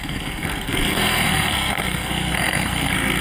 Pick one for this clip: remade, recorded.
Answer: remade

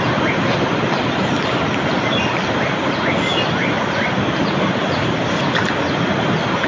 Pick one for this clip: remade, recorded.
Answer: recorded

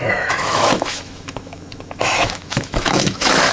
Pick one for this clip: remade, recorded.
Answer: remade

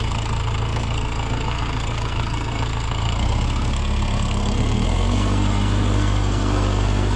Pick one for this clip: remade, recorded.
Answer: remade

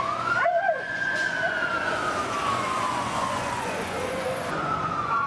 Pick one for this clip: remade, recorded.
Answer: remade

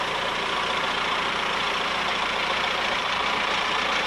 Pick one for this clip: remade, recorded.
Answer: remade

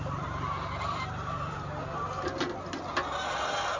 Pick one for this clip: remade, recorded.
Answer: recorded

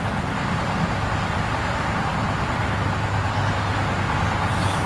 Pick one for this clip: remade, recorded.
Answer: recorded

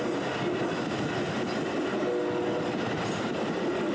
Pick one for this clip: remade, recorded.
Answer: recorded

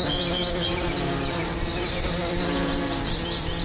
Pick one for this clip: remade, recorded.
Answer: recorded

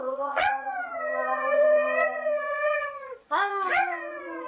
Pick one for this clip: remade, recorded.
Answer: remade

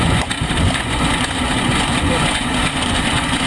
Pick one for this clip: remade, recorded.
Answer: remade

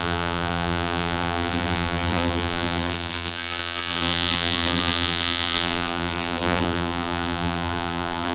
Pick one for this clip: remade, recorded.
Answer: remade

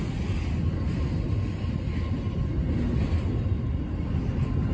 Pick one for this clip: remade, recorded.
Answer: recorded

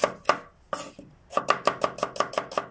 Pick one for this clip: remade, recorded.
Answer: recorded